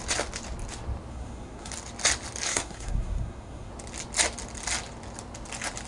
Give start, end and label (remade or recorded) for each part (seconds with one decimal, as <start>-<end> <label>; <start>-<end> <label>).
0.0-1.1 recorded; 1.1-1.7 remade; 1.7-2.5 recorded; 2.5-3.7 remade; 3.7-5.9 recorded